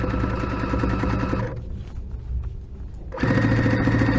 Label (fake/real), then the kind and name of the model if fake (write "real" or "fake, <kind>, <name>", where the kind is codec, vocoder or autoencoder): real